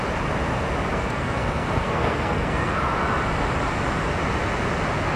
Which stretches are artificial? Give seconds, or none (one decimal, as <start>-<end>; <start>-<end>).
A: 0.9-2.8